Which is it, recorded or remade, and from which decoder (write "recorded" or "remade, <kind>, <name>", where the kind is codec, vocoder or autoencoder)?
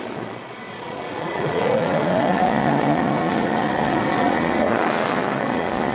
remade, vocoder, Vocos